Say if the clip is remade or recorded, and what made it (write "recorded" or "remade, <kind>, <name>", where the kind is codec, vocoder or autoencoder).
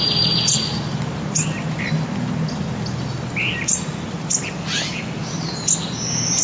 recorded